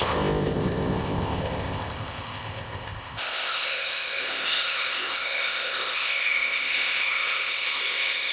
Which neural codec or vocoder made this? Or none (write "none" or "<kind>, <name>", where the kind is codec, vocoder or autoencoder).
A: codec, ZipCodec